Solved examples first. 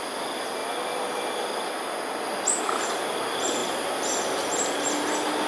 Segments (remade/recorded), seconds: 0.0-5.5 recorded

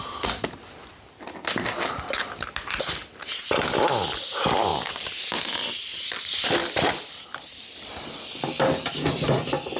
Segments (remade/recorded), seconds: 0.0-4.7 recorded; 4.7-5.3 remade; 5.3-9.8 recorded